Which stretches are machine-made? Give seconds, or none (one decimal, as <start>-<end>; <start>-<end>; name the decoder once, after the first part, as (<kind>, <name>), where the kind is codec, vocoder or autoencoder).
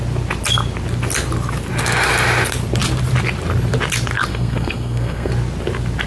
4.3-5.3 (codec, SNAC)